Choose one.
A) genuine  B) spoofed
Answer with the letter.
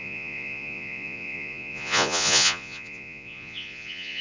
B